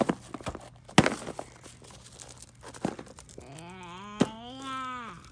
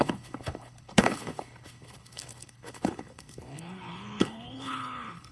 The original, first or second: first